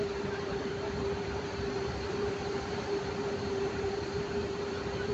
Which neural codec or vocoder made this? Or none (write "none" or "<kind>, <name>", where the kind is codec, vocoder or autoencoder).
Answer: vocoder, BigVGAN v2